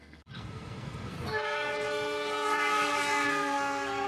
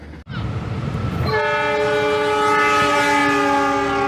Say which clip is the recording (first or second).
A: second